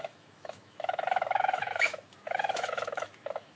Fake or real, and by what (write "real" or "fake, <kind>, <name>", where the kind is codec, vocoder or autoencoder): fake, autoencoder, DAC-VAE